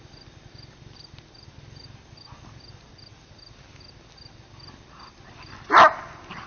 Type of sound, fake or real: real